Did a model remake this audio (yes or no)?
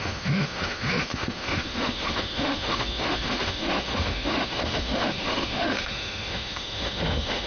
yes